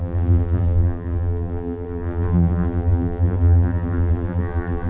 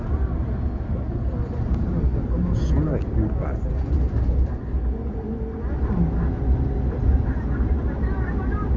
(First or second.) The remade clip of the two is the first